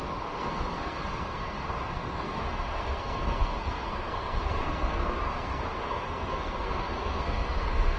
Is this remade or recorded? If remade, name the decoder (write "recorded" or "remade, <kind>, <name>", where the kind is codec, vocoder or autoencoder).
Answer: remade, codec, SNAC